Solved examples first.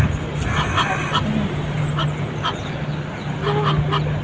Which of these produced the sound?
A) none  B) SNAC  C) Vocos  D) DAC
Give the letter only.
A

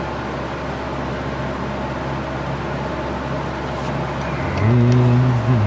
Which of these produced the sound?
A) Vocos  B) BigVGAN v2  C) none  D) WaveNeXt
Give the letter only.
C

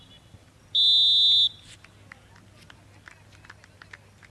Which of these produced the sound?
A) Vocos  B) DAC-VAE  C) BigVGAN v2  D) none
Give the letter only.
D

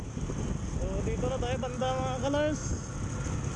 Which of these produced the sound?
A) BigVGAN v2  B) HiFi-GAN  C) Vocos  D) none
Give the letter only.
D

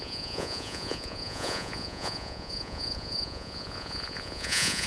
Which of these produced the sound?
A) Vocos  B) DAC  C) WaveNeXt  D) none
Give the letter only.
A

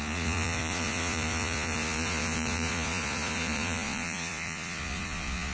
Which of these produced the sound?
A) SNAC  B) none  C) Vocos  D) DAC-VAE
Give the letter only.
C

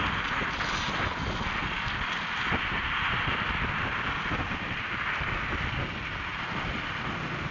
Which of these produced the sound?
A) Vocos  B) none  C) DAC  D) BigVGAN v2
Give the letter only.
B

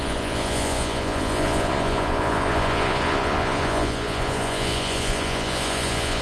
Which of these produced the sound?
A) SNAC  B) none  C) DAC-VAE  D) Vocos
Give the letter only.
D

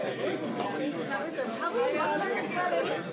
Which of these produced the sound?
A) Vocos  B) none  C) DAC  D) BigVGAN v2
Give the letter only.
B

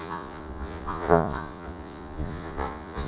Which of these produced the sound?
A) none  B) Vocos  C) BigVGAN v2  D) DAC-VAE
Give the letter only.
B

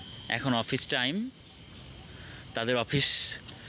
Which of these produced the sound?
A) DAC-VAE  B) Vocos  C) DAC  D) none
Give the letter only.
D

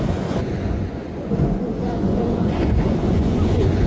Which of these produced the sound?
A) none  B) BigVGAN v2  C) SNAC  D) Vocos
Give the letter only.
D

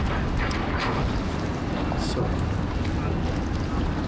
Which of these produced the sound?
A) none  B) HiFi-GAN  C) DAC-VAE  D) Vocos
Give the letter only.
A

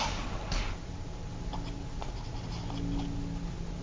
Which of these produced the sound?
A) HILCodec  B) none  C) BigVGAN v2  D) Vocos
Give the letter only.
B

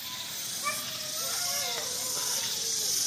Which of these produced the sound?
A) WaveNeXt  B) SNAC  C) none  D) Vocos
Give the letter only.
C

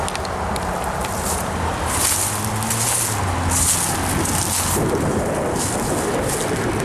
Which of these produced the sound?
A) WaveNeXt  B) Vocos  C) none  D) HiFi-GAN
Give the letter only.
C